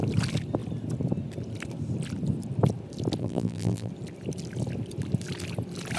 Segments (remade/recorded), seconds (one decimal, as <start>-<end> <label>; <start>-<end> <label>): 0.0-3.2 recorded; 3.2-3.9 remade; 3.9-6.0 recorded